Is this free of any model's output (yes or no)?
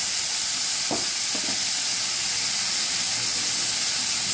yes